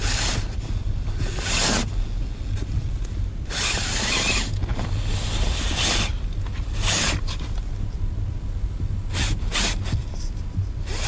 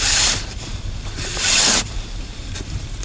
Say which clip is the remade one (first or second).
second